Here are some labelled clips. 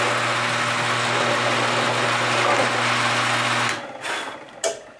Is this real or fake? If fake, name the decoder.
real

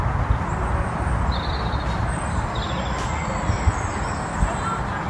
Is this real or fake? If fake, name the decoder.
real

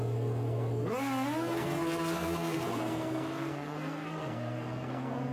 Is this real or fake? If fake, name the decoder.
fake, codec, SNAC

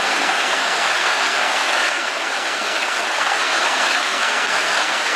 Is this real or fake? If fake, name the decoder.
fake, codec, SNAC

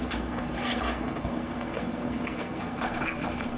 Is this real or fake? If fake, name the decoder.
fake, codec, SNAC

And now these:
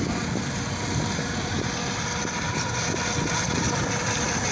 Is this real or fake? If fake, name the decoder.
real